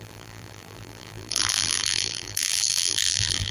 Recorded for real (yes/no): no